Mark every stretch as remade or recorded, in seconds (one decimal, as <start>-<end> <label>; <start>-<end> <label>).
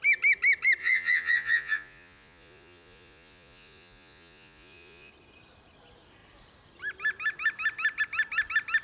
0.0-0.8 recorded; 0.8-5.1 remade; 5.1-8.8 recorded